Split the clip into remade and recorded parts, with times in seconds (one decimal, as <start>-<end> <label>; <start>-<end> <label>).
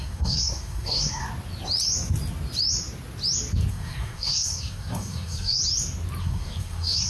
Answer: 0.0-1.2 remade; 1.2-3.7 recorded; 3.7-5.6 remade; 5.6-6.2 recorded; 6.2-7.1 remade